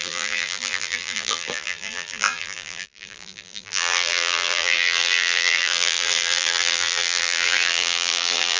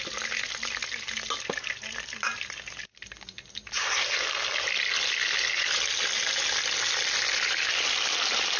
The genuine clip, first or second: second